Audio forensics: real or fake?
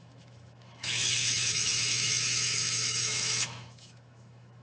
fake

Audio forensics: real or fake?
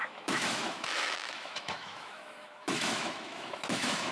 fake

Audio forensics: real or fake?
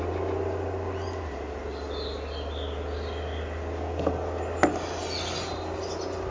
real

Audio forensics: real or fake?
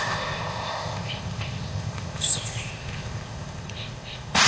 fake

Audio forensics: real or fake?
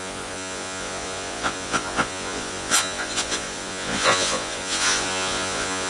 fake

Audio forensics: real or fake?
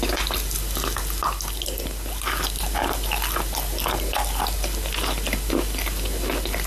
real